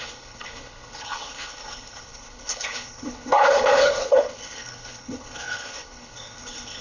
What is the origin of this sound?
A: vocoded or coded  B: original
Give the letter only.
A